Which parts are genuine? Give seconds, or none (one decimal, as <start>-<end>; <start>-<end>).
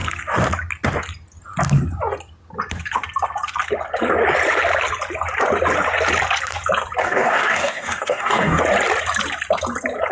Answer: 0.0-7.0; 8.6-10.1